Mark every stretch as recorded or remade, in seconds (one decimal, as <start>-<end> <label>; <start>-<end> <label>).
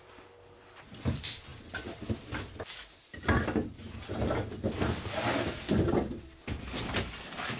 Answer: 0.0-7.6 recorded